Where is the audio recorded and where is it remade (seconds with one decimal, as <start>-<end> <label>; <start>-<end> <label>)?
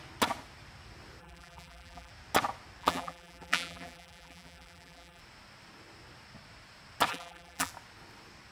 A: 0.0-1.2 recorded; 1.2-2.1 remade; 2.1-2.8 recorded; 2.8-5.2 remade; 5.2-7.1 recorded; 7.1-7.7 remade; 7.7-8.5 recorded